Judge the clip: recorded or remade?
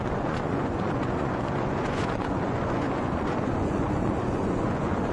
remade